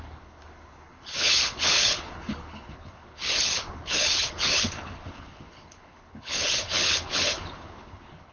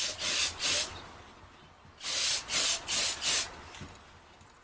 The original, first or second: second